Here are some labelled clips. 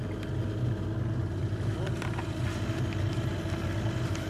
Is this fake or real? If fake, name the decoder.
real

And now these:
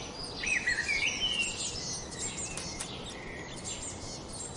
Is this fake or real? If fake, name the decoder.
real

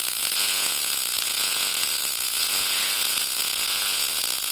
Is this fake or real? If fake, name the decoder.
fake, vocoder, Vocos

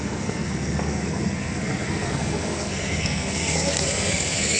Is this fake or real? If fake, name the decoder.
fake, codec, SNAC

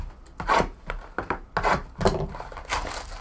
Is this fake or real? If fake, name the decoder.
real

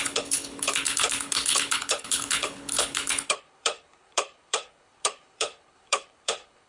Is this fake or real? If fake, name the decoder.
fake, codec, HILCodec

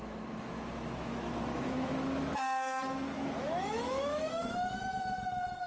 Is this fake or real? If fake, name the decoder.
fake, autoencoder, DAC-VAE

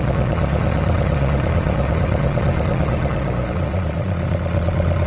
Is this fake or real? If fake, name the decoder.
fake, vocoder, Vocos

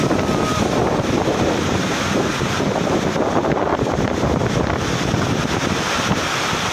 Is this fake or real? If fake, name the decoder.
fake, vocoder, BigVGAN v2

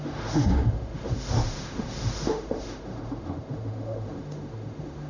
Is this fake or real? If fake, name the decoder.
fake, autoencoder, DAC-VAE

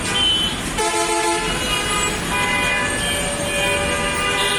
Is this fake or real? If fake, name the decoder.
real